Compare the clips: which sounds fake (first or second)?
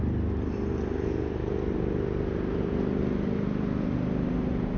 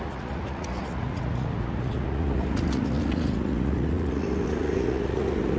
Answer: second